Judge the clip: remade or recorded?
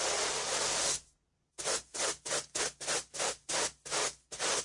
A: recorded